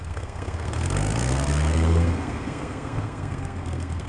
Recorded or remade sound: remade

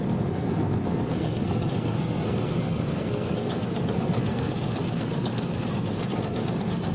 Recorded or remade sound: remade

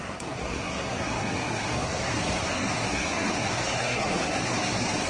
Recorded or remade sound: remade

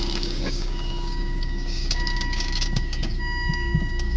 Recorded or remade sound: remade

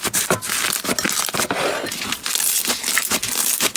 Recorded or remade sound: recorded